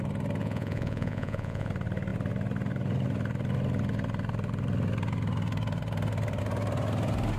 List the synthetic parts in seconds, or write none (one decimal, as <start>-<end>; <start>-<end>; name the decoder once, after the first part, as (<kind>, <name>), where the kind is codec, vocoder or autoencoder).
0.4-1.7 (vocoder, Vocos)